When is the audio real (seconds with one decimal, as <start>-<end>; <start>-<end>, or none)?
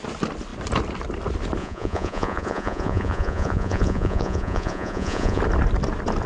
0.0-1.6; 5.4-6.3